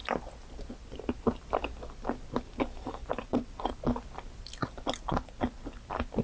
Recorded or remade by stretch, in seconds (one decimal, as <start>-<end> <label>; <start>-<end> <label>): 0.0-3.2 recorded; 3.2-3.7 remade; 3.7-6.2 recorded